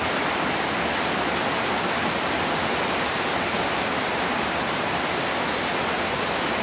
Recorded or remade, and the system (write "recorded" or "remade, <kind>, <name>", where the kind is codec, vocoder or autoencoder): recorded